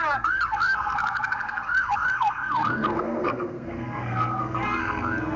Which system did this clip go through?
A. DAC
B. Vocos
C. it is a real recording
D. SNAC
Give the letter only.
D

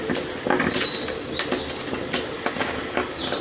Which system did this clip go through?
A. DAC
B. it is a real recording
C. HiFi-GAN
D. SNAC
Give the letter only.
B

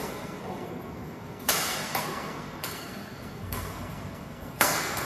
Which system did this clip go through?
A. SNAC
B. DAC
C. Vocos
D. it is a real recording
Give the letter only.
A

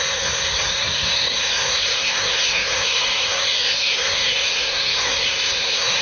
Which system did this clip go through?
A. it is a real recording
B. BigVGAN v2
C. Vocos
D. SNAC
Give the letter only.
D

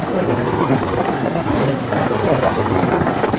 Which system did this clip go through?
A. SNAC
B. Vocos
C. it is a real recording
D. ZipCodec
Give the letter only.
A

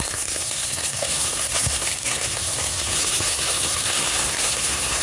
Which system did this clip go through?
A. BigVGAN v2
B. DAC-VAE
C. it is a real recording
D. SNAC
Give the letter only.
D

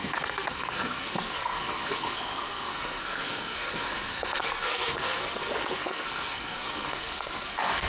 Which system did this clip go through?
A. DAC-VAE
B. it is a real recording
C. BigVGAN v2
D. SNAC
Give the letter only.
D